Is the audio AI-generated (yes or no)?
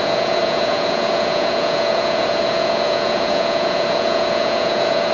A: yes